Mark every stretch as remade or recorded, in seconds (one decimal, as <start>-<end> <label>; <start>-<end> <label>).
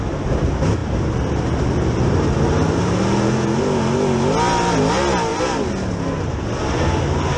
0.0-7.4 recorded